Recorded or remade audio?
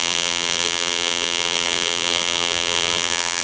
remade